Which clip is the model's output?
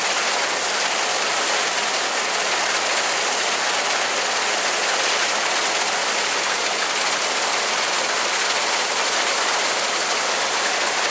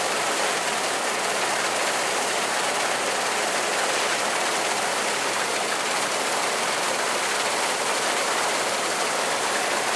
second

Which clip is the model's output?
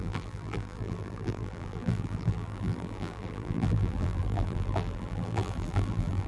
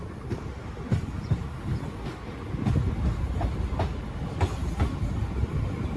first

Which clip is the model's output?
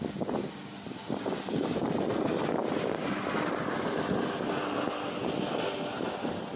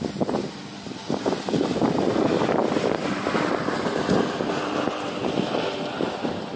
second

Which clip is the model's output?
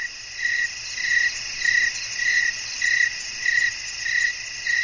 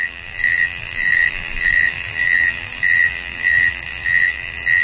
second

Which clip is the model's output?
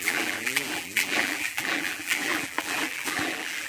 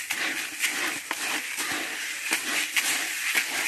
first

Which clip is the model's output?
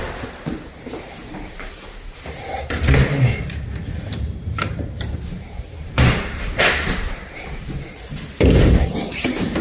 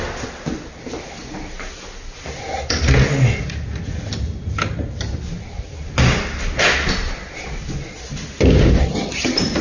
first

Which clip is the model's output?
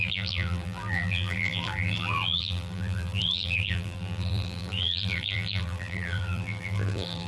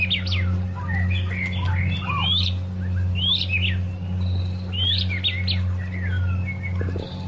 first